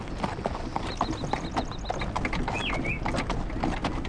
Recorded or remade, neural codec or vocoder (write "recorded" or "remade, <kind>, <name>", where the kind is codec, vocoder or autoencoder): recorded